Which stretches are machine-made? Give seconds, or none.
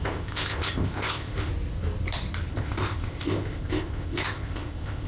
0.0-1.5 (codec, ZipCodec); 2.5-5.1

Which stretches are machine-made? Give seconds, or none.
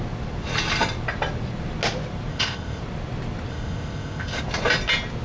2.3-2.8 (codec, ZipCodec); 3.5-4.4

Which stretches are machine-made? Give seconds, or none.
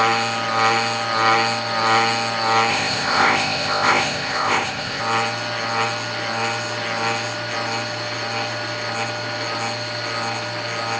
2.7-5.0 (codec, ZipCodec)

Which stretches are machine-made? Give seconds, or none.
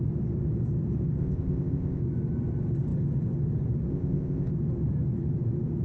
1.2-2.0 (codec, ZipCodec); 3.9-4.5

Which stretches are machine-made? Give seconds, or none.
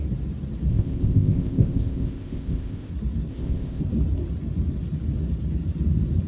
0.7-2.9 (codec, ZipCodec); 3.3-3.8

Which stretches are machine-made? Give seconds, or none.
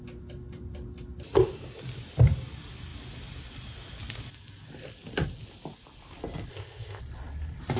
6.5-7.0 (codec, ZipCodec)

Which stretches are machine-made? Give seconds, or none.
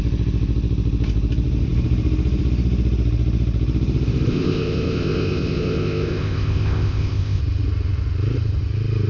4.3-7.4 (codec, ZipCodec)